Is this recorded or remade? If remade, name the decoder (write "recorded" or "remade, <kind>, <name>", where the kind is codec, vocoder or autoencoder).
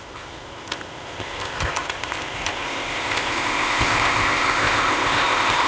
remade, codec, ZipCodec